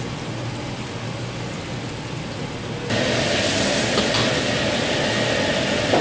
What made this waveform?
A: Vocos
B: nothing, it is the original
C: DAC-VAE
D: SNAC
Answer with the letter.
B